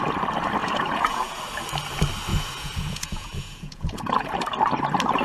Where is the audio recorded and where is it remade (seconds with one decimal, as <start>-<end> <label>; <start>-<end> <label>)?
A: 0.0-0.6 recorded; 0.6-1.4 remade; 1.4-2.3 recorded; 2.3-4.4 remade; 4.4-5.2 recorded